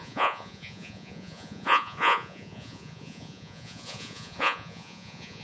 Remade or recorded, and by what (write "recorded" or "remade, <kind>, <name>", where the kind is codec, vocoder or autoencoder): remade, vocoder, Vocos